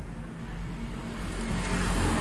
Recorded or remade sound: recorded